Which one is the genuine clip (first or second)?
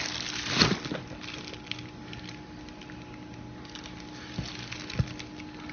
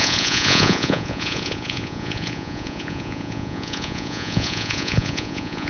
first